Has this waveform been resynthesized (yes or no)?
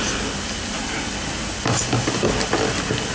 no